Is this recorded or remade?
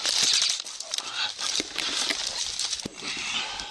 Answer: recorded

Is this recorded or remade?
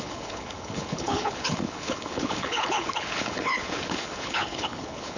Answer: remade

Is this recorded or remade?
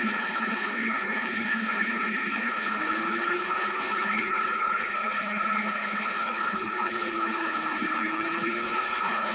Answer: remade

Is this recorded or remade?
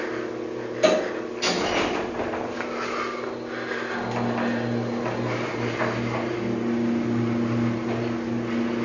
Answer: recorded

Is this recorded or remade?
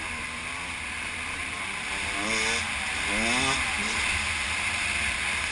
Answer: recorded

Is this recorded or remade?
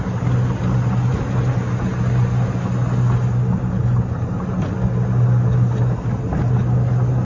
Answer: recorded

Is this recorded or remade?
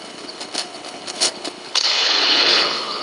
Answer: remade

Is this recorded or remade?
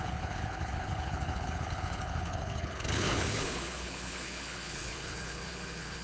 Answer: remade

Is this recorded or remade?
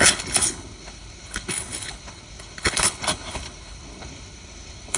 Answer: remade